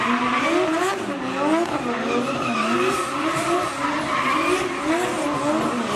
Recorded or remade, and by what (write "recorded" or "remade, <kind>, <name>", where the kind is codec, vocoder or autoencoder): recorded